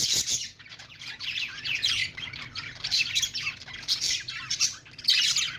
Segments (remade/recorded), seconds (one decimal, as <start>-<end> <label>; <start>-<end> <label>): 0.0-2.0 remade; 2.0-5.6 recorded